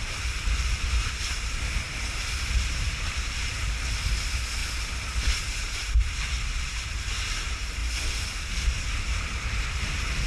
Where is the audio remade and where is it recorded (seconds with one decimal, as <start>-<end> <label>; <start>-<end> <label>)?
0.0-4.6 remade; 4.6-5.4 recorded; 5.4-7.8 remade; 7.8-9.0 recorded; 9.0-10.3 remade